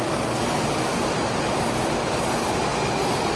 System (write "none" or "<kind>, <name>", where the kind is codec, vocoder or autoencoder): none